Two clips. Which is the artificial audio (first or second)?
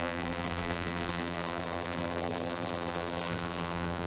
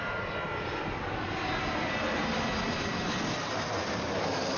first